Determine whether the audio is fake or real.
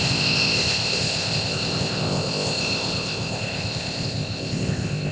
fake